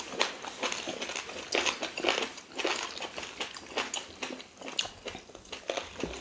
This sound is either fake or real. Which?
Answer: real